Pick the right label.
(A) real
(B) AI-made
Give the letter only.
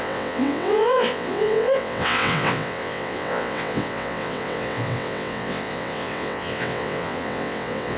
B